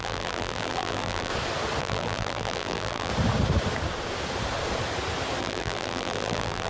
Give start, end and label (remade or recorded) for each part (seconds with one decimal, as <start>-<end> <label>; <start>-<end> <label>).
0.0-1.3 remade; 1.3-1.8 recorded; 1.8-3.1 remade; 3.1-5.4 recorded; 5.4-6.7 remade